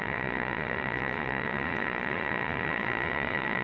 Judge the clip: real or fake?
fake